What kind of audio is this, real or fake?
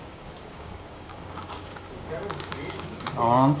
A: fake